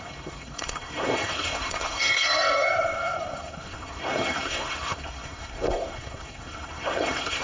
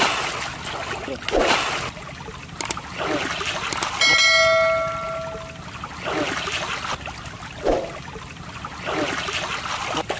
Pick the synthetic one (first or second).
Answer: first